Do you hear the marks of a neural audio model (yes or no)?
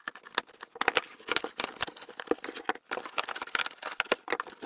no